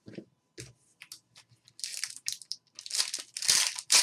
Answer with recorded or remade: recorded